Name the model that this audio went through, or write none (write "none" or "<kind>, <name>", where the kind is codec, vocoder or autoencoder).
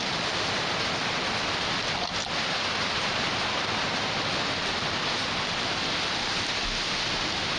none